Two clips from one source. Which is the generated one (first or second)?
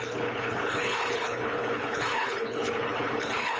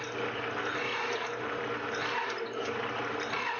first